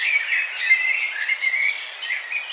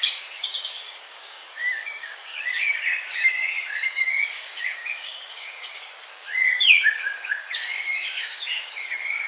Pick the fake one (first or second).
second